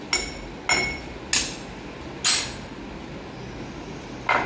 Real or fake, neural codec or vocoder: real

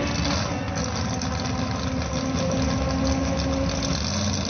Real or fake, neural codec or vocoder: real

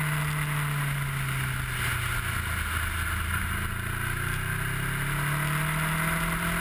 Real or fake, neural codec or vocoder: real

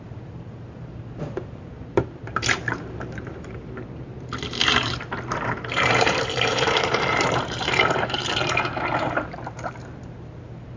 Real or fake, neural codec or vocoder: fake, vocoder, BigVGAN v2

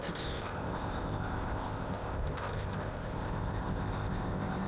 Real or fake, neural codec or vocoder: fake, codec, ZipCodec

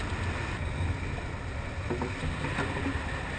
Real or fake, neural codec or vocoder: real